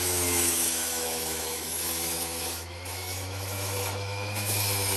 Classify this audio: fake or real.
fake